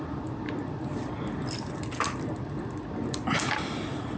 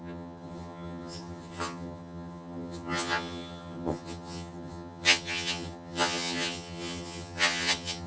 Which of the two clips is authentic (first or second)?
first